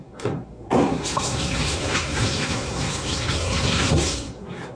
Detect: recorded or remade remade